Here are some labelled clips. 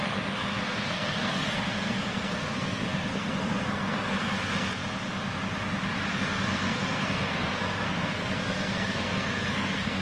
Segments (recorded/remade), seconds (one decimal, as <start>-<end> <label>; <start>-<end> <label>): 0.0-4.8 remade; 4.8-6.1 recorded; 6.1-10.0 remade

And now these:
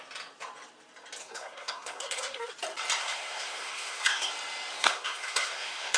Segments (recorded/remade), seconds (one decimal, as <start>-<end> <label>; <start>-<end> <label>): 0.0-1.2 recorded; 1.2-2.5 remade; 2.5-3.0 recorded; 3.0-4.3 remade; 4.3-4.7 recorded; 4.7-6.0 remade

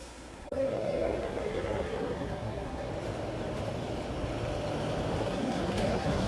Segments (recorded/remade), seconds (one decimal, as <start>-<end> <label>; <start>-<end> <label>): 0.0-2.9 remade; 2.9-5.2 recorded; 5.2-6.3 remade

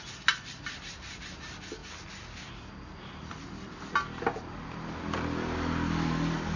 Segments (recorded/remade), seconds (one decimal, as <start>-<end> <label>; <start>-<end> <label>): 0.0-6.6 recorded

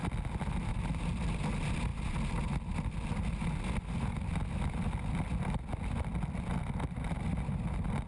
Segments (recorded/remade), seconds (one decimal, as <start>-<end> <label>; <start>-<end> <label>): 0.0-8.1 recorded

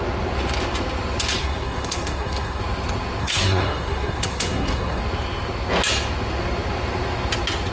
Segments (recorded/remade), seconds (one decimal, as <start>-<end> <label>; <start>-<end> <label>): 0.0-1.4 recorded; 1.4-2.6 remade; 2.6-3.2 recorded; 3.2-5.0 remade; 5.0-7.7 recorded

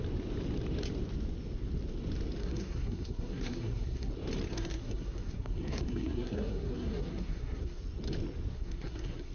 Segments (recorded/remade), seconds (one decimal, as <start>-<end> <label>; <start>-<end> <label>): 0.0-2.4 recorded; 2.4-4.1 remade; 4.1-4.5 recorded; 4.5-7.8 remade; 7.8-8.5 recorded; 8.5-9.3 remade